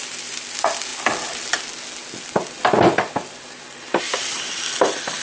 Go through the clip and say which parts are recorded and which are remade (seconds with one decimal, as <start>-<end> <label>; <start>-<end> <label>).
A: 0.0-5.2 recorded